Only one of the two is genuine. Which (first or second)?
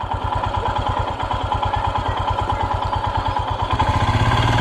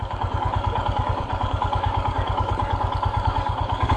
first